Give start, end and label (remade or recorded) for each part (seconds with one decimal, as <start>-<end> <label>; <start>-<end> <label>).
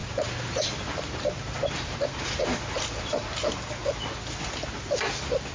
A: 0.0-3.3 remade; 3.3-5.5 recorded